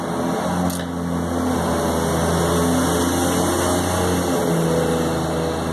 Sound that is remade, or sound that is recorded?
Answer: recorded